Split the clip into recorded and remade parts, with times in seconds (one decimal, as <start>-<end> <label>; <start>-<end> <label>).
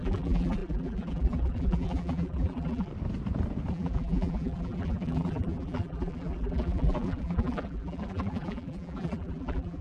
0.0-2.9 remade; 2.9-3.7 recorded; 3.7-9.8 remade